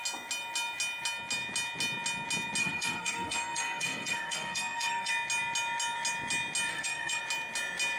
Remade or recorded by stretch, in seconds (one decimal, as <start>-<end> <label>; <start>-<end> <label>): 0.0-2.6 recorded; 2.6-5.1 remade; 5.1-6.7 recorded; 6.7-7.2 remade; 7.2-8.0 recorded